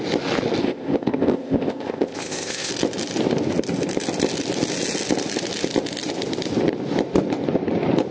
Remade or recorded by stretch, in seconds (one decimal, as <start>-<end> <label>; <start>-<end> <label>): 0.0-0.6 recorded; 0.6-2.7 remade; 2.7-8.1 recorded

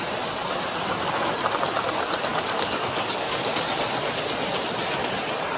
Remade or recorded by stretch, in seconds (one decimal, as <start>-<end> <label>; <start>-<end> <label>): 0.0-2.3 recorded; 2.3-3.5 remade; 3.5-5.6 recorded

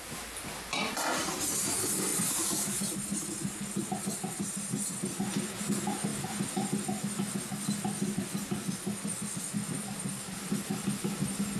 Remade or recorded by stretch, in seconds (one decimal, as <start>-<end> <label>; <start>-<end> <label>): 0.0-11.6 recorded

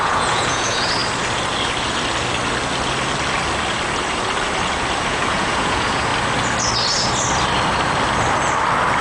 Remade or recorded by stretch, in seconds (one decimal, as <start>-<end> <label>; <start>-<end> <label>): 0.0-1.0 remade; 1.0-5.1 recorded; 5.1-6.1 remade; 6.1-9.0 recorded

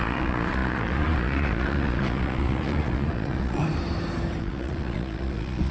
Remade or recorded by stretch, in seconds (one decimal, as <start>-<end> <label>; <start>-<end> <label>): 0.0-3.6 remade; 3.6-4.4 recorded; 4.4-5.7 remade

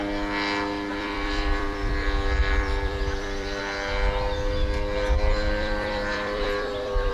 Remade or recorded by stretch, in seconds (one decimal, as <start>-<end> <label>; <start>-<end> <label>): 0.0-0.9 recorded; 0.9-1.9 remade; 1.9-2.4 recorded; 2.4-3.6 remade; 3.6-5.3 recorded; 5.3-7.1 remade

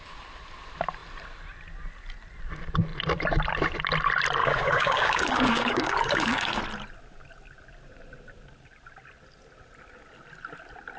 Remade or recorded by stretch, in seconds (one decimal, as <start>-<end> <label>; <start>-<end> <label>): 0.0-4.4 recorded; 4.4-6.6 remade; 6.6-11.0 recorded

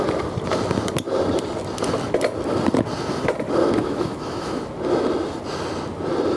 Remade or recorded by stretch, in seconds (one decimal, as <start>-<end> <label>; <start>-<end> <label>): 0.0-3.8 recorded; 3.8-4.6 remade; 4.6-6.4 recorded